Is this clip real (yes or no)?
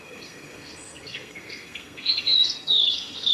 no